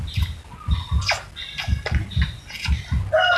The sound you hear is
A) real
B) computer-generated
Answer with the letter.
A